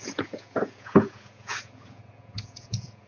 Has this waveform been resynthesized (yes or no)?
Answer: yes